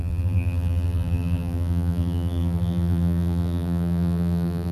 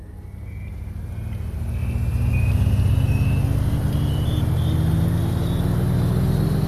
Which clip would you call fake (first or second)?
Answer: first